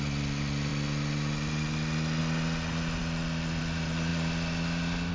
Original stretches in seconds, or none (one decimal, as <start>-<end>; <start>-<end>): 0.0-5.1